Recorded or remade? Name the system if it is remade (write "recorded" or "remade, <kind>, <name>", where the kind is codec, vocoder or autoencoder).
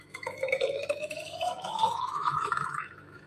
remade, autoencoder, DAC-VAE